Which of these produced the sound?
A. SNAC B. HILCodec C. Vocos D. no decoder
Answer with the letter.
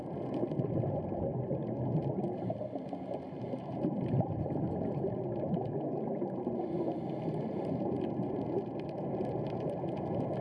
D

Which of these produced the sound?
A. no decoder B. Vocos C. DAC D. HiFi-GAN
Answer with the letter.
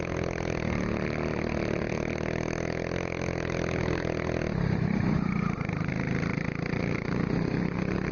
A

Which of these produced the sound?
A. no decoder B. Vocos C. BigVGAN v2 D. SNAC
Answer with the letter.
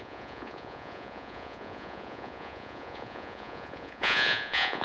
B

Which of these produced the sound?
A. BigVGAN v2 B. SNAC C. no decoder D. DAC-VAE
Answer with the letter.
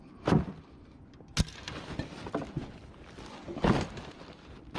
C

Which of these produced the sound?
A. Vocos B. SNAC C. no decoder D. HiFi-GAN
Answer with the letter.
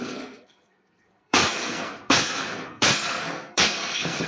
B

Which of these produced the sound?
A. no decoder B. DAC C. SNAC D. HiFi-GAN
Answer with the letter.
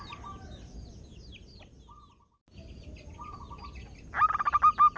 A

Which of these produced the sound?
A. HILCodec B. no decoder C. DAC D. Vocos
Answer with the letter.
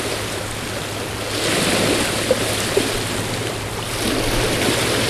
B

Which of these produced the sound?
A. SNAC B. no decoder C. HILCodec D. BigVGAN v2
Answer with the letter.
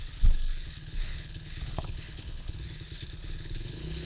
C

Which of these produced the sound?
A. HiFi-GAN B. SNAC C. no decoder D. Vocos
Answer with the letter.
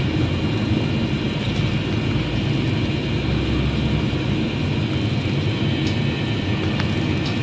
C